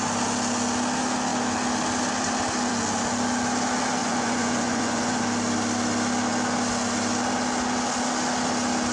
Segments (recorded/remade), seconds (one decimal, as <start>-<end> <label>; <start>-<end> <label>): 0.0-4.0 recorded; 4.0-5.2 remade; 5.2-8.9 recorded